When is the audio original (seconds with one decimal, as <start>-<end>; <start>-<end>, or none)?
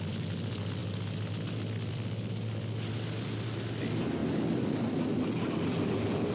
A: 0.0-6.3